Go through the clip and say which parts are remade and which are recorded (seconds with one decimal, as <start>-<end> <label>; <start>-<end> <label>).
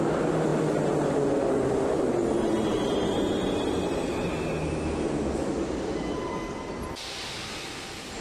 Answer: 0.0-8.2 recorded